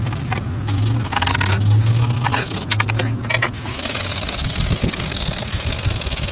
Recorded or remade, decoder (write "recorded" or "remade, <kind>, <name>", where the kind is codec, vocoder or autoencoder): recorded